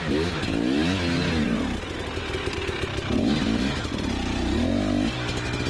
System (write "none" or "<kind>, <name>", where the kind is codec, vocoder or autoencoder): none